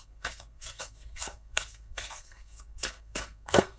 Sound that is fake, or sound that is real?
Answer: fake